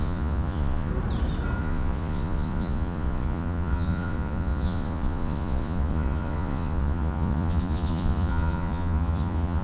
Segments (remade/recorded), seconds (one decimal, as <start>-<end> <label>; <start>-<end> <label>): 0.0-0.9 remade; 0.9-1.6 recorded; 1.6-9.6 remade